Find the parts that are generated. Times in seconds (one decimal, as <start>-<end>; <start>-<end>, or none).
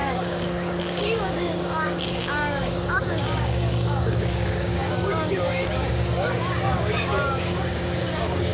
0.0-8.5